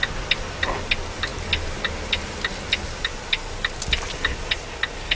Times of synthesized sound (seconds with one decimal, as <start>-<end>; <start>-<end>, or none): none